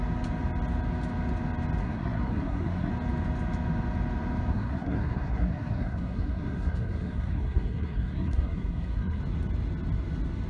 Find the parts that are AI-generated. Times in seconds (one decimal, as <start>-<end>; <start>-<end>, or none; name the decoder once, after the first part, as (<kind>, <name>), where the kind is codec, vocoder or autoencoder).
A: 1.8-2.9 (codec, SNAC); 4.5-9.2